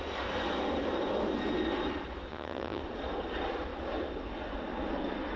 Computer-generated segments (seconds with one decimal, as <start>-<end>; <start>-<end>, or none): 2.3-2.8